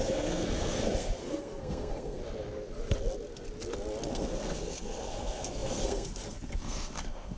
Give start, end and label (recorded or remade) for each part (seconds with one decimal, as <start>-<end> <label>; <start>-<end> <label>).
0.0-2.2 remade; 2.2-4.1 recorded; 4.1-7.4 remade